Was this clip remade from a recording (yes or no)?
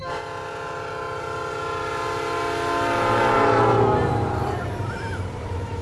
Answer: yes